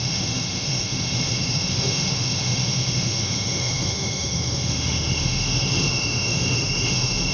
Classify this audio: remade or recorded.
remade